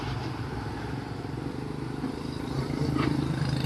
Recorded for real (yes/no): no